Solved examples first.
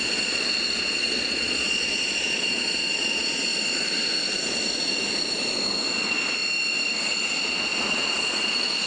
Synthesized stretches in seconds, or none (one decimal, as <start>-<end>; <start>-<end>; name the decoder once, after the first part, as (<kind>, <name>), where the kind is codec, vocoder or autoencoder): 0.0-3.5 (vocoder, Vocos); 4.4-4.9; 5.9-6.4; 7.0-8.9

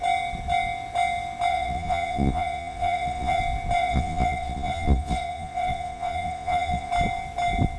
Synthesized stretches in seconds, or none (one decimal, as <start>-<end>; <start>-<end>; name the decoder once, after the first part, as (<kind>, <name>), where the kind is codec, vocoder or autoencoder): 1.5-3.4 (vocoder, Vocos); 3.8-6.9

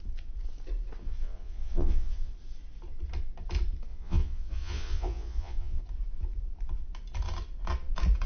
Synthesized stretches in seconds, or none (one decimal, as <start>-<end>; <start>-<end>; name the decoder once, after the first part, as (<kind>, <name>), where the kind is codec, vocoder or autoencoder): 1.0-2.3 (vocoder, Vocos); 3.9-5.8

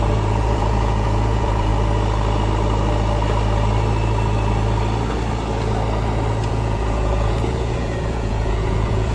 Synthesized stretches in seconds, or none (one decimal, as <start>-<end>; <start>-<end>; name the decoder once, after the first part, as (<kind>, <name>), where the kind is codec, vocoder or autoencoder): 0.0-1.7 (vocoder, Vocos); 6.5-9.1

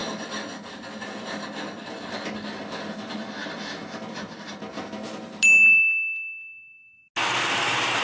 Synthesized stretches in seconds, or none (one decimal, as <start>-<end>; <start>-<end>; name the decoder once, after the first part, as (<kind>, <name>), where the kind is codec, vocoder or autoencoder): none